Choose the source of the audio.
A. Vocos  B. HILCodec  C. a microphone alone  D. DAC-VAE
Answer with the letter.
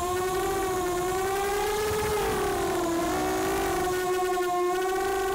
C